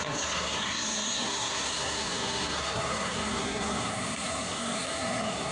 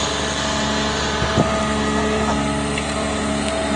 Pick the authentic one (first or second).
second